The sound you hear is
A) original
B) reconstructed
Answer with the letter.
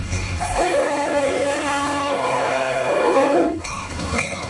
B